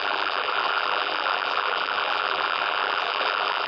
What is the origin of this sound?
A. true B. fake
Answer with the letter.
B